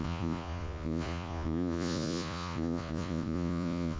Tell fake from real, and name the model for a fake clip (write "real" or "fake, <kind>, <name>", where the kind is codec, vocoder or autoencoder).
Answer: fake, vocoder, Vocos